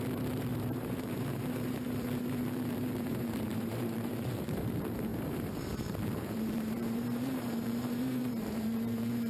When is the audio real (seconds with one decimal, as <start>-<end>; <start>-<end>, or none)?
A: none